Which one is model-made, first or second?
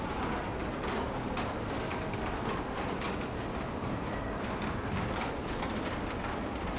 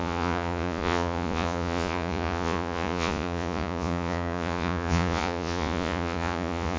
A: second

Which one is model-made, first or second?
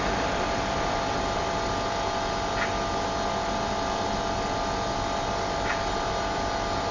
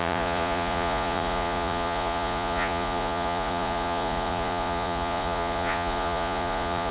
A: second